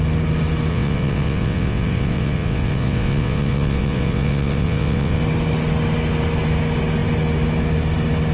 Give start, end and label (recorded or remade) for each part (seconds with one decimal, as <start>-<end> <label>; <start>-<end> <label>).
0.0-0.7 recorded; 0.7-5.2 remade; 5.2-8.3 recorded